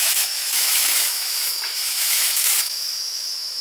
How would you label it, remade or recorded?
remade